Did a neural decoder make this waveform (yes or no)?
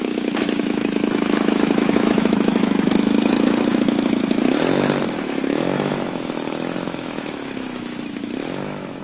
yes